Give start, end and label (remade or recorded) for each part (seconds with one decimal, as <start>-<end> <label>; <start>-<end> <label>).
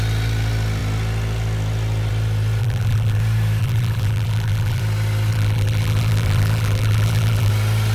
0.0-2.6 recorded; 2.6-3.2 remade; 3.2-3.6 recorded; 3.6-4.8 remade; 4.8-5.3 recorded; 5.3-7.5 remade; 7.5-7.9 recorded